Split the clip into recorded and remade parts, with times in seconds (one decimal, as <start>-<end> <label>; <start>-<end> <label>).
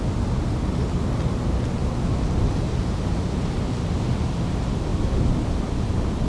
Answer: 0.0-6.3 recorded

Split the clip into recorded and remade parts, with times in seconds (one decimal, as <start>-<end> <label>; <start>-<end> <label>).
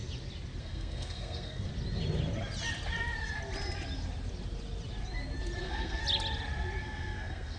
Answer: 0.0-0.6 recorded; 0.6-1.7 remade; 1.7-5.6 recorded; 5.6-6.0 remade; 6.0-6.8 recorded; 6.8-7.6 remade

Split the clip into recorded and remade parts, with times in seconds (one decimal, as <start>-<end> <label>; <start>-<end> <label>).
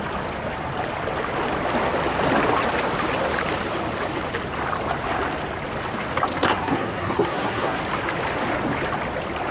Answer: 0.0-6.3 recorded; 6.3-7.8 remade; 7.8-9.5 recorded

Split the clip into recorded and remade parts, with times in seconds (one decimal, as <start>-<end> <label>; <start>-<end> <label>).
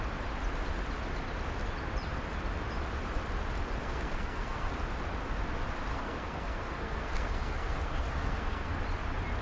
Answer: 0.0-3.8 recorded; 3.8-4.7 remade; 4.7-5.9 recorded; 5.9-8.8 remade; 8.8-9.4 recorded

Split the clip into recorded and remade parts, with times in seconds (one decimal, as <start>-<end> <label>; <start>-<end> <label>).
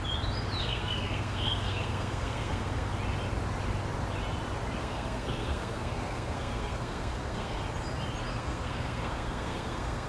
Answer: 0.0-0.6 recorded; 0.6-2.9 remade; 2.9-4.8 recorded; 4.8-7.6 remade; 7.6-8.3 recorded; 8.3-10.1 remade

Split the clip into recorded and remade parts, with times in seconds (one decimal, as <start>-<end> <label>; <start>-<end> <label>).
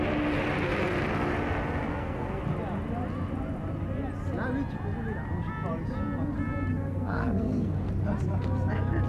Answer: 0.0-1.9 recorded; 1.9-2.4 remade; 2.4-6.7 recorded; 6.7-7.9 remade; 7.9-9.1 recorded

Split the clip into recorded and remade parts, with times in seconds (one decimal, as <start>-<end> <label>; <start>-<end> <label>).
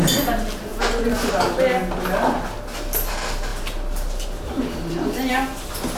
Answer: 0.0-6.0 recorded